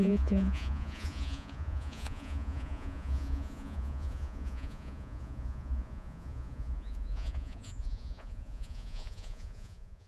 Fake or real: fake